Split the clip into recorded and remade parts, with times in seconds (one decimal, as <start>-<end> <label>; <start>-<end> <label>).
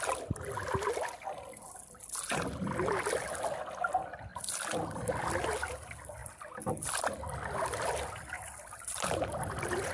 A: 0.0-9.9 recorded